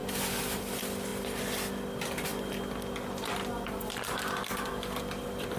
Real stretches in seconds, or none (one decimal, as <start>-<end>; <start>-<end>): 0.7-5.6